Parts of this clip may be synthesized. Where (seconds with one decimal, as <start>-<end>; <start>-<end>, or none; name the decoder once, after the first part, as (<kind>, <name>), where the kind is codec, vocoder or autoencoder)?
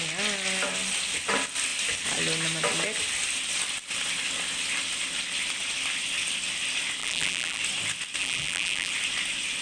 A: 7.0-7.6 (vocoder, BigVGAN v2); 8.2-8.9